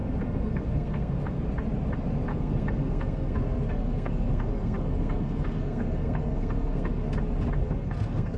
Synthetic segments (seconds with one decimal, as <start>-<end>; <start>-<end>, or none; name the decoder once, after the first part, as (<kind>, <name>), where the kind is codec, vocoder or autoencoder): 0.0-1.4 (codec, SNAC); 2.3-7.1; 7.6-8.4